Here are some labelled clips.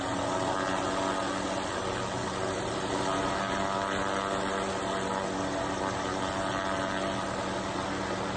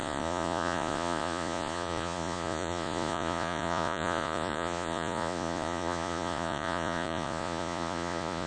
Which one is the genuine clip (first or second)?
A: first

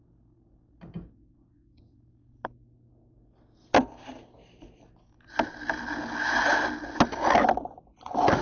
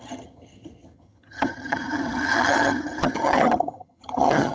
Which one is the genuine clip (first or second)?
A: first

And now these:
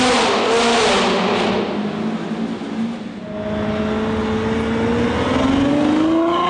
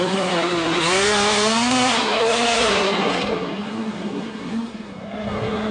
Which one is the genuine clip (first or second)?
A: first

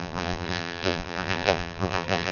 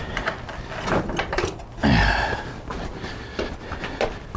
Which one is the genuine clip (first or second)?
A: second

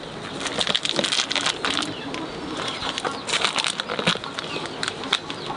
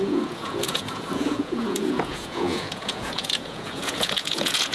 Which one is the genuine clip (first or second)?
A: first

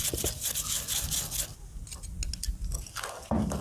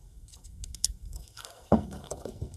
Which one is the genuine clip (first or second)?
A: first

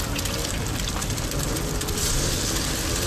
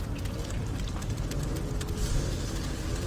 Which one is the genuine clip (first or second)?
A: second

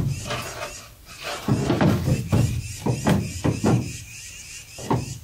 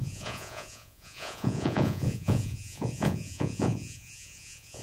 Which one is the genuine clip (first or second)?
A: first